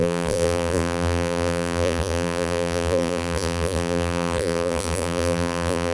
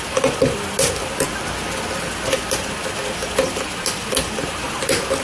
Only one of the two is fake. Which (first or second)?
first